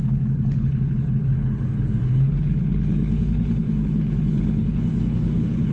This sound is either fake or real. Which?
fake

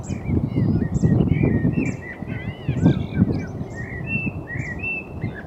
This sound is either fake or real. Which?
real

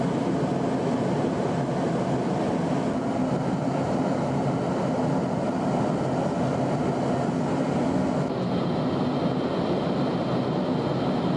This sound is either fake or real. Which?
real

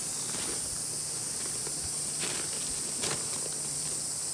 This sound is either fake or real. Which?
real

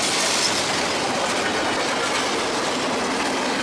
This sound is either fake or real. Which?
real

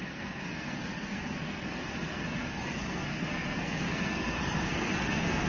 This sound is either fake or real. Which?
fake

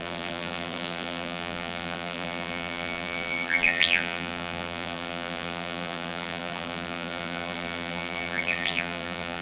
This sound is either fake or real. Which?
fake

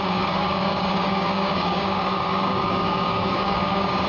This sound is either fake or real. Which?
fake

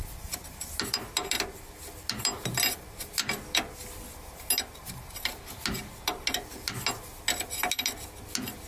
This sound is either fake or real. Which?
real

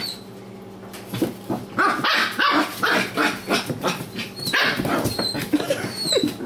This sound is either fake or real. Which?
real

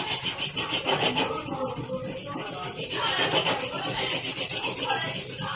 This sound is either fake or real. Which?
real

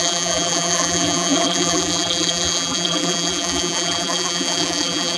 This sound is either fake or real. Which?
fake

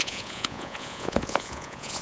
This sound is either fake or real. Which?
fake